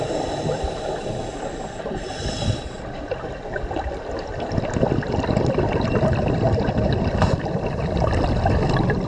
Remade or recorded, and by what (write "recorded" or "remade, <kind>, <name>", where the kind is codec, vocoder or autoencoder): remade, vocoder, BigVGAN v2